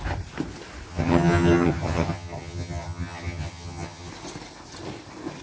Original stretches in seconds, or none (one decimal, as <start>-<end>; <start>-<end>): 0.0-0.9; 4.1-5.4